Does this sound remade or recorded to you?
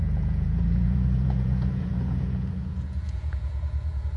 remade